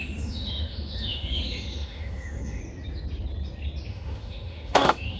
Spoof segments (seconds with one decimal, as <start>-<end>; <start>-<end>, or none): 0.0-2.6; 3.9-5.2